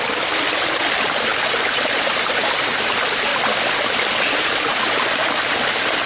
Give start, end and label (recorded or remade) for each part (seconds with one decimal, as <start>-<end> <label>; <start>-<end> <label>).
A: 0.0-6.1 recorded